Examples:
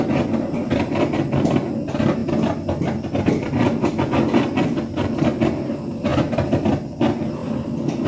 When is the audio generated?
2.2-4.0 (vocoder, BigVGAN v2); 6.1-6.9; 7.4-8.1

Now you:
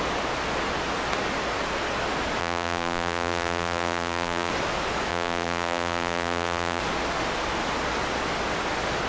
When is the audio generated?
2.4-4.5 (vocoder, BigVGAN v2); 5.1-6.8

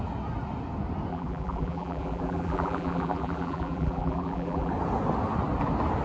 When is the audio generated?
1.1-4.7 (vocoder, BigVGAN v2)

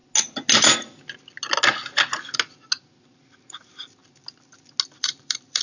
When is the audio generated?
3.4-4.0 (vocoder, BigVGAN v2); 5.0-5.6

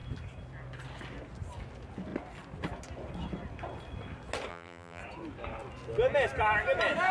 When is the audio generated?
4.5-5.0 (vocoder, BigVGAN v2)

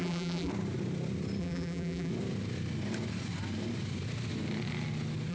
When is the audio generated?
0.0-0.5 (vocoder, BigVGAN v2); 1.4-2.1

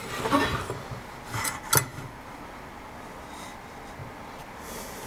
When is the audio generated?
1.9-2.4 (vocoder, BigVGAN v2)